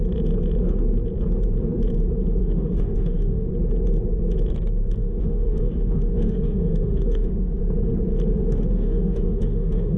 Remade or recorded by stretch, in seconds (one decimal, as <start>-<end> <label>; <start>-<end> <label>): 0.0-2.4 recorded; 2.4-3.5 remade; 3.5-5.0 recorded; 5.0-7.6 remade; 7.6-8.4 recorded; 8.4-10.0 remade